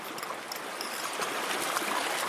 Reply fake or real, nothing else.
real